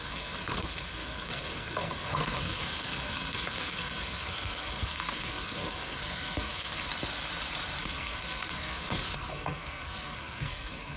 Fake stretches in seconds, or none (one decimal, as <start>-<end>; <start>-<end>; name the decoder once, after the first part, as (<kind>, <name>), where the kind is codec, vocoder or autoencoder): 0.0-6.9 (codec, SNAC); 7.8-11.0

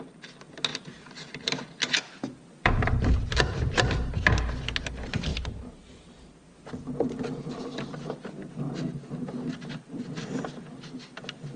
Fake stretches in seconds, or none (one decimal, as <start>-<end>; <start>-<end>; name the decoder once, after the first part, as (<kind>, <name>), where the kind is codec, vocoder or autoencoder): 0.7-4.2 (vocoder, BigVGAN v2); 5.3-6.7

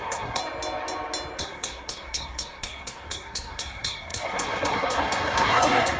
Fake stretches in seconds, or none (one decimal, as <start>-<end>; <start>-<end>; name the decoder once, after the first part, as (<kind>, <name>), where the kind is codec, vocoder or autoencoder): 0.0-0.4 (codec, SNAC); 1.4-6.0

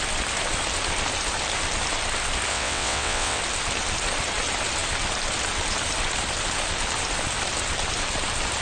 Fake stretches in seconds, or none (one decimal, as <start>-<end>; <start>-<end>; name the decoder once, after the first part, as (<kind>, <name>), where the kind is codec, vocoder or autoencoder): 2.5-3.4 (vocoder, WaveNeXt)

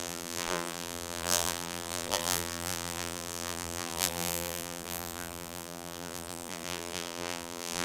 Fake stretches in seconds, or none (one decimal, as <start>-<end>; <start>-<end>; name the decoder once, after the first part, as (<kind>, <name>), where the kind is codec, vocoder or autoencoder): 0.0-7.8 (vocoder, BigVGAN v2)